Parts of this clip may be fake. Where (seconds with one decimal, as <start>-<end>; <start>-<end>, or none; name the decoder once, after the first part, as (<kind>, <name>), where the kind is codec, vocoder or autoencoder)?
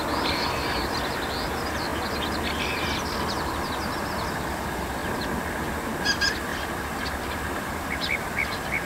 none